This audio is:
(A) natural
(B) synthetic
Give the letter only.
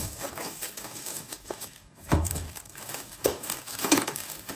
B